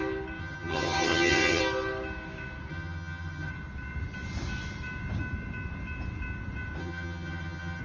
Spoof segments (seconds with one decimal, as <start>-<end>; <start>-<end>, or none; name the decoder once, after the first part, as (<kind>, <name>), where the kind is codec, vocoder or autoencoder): 0.4-1.6 (vocoder, HiFi-GAN); 2.7-3.5; 6.8-7.8